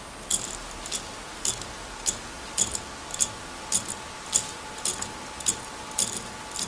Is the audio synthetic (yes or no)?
no